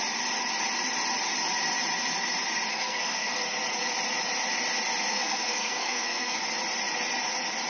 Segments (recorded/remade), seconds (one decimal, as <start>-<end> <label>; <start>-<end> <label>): 0.0-2.7 recorded; 2.7-3.4 remade; 3.4-5.1 recorded; 5.1-6.4 remade; 6.4-7.7 recorded